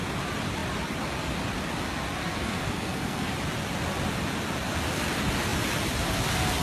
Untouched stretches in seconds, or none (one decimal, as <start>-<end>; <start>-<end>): 0.0-2.2; 3.3-6.6